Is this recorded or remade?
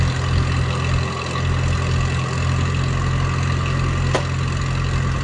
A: recorded